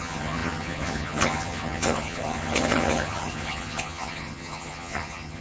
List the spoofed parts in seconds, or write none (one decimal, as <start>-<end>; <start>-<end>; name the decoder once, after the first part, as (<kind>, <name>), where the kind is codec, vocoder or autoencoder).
0.0-5.4 (vocoder, HiFi-GAN)